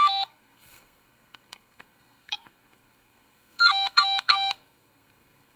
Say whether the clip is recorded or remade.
remade